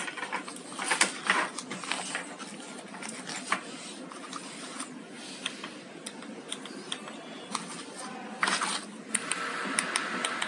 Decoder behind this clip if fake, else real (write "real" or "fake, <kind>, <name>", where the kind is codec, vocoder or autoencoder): real